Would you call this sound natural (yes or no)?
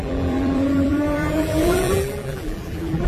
no